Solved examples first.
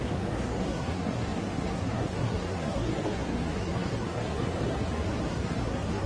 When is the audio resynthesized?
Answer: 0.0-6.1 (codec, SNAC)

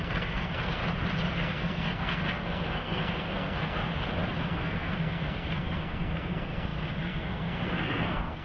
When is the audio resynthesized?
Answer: 0.0-0.8 (codec, SNAC); 1.3-3.9; 4.4-8.4